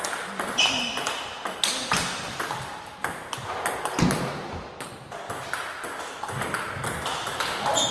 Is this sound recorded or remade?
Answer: recorded